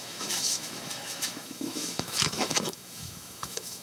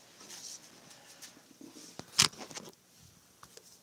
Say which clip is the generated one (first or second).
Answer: first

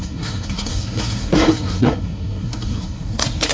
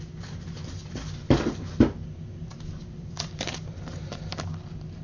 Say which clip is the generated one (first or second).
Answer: first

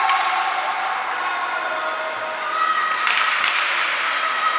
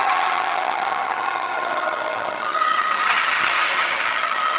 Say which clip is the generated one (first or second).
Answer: second